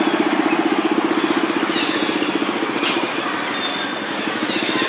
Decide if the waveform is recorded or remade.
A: recorded